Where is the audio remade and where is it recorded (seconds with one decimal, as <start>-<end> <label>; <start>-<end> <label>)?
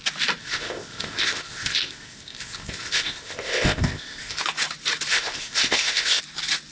0.0-0.4 recorded; 0.4-4.4 remade; 4.4-5.1 recorded; 5.1-6.2 remade; 6.2-6.7 recorded